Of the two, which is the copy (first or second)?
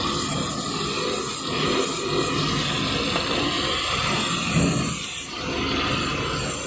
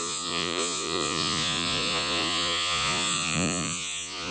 second